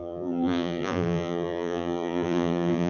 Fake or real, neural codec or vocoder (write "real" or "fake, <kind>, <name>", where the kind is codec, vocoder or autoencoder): fake, vocoder, BigVGAN v2